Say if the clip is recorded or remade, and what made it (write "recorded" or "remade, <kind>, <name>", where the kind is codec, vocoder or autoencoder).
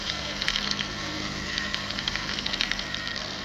remade, codec, SNAC